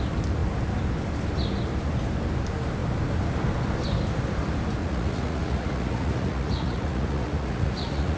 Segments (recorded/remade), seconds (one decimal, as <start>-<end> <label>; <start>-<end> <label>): 0.0-4.8 recorded; 4.8-8.2 remade